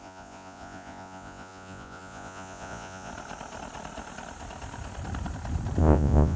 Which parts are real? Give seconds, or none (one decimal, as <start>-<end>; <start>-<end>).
3.1-5.8